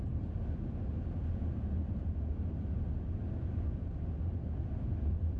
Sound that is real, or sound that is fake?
real